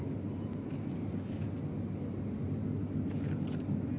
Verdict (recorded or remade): recorded